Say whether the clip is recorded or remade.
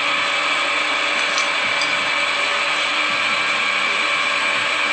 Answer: recorded